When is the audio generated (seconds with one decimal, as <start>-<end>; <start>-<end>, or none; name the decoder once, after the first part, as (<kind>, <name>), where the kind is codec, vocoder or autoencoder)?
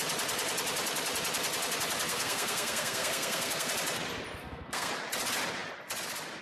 2.1-3.7 (codec, SNAC); 4.4-4.9